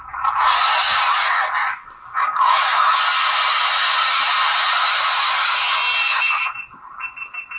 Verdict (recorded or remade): recorded